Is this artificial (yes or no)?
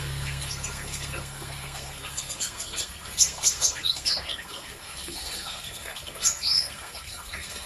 yes